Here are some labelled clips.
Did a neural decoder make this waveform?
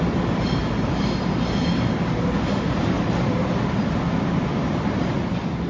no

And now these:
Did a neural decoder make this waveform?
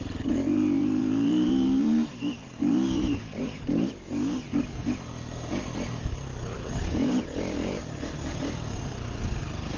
yes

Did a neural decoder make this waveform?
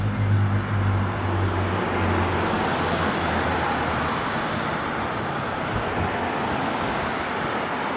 no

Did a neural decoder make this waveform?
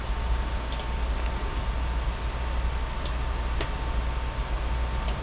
no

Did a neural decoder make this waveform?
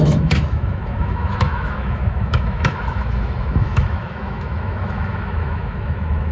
yes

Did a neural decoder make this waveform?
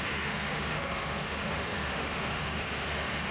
yes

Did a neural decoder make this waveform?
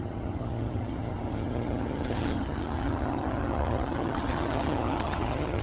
yes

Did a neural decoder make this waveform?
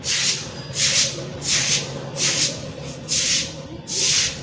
no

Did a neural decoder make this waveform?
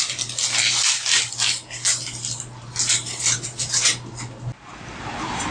no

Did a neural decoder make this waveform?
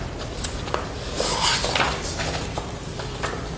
no